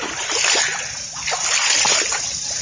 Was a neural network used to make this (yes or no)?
no